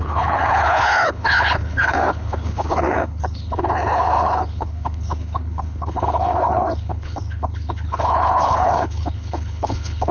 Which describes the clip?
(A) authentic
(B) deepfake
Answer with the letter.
B